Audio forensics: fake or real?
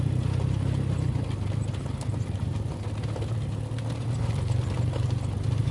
real